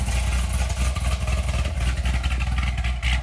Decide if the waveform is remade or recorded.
recorded